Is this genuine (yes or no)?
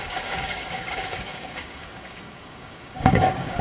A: no